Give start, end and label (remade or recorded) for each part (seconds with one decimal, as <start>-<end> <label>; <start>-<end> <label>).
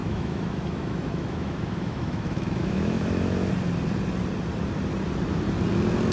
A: 0.0-3.5 remade; 3.5-6.1 recorded